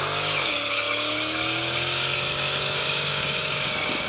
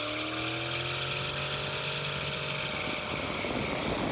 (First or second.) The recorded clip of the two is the second